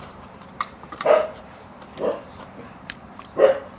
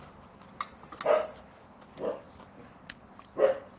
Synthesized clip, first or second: first